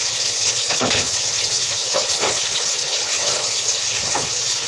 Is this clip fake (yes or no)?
yes